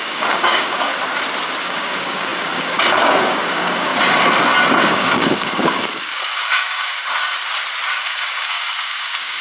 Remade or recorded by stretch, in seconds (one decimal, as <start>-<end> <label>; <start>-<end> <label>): 0.0-0.9 remade; 0.9-1.6 recorded; 1.6-3.9 remade; 3.9-4.8 recorded; 4.8-7.0 remade; 7.0-8.0 recorded; 8.0-9.4 remade